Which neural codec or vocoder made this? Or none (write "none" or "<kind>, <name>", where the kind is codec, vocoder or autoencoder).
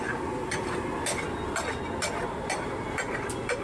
none